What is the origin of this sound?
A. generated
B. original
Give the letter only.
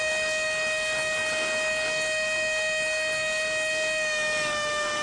A